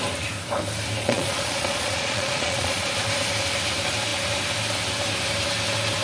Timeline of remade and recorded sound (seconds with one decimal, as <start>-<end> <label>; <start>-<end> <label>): 0.0-1.0 recorded; 1.0-2.9 remade; 2.9-6.0 recorded